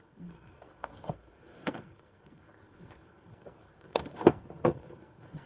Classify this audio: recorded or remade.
remade